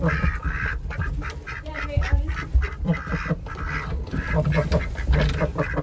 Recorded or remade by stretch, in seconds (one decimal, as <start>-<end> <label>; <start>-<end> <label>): 0.0-5.8 recorded